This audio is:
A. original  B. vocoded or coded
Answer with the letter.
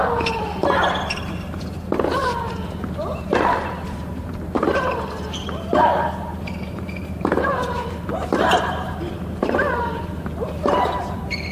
B